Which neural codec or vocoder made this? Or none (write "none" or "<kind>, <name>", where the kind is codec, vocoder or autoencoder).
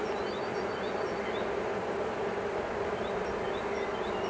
none